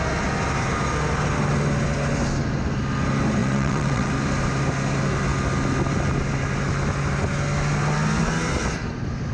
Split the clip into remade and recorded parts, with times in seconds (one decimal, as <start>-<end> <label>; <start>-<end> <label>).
0.0-3.4 recorded; 3.4-4.1 remade; 4.1-9.3 recorded